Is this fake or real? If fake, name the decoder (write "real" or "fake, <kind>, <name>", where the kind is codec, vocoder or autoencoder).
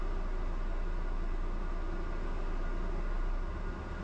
real